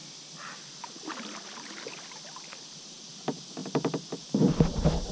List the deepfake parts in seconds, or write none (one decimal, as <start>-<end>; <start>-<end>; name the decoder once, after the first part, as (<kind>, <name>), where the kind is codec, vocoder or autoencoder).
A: none